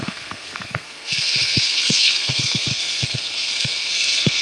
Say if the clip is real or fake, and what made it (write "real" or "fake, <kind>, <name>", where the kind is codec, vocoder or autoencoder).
fake, codec, SNAC